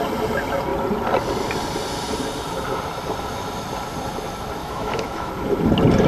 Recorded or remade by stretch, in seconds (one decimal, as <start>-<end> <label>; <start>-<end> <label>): 0.0-4.6 recorded; 4.6-5.3 remade; 5.3-6.1 recorded